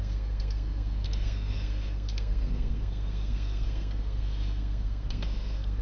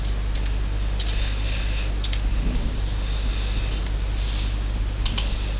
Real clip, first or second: second